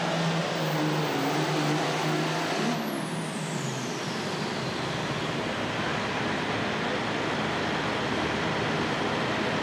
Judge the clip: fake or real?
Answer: real